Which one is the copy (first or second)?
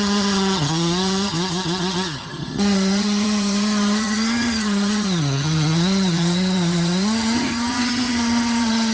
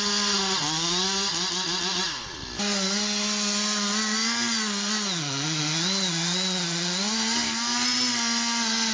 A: first